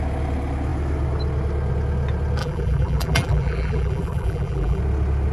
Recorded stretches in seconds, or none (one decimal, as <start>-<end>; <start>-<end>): 0.0-2.4; 4.8-5.3